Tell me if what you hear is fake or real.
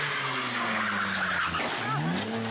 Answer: real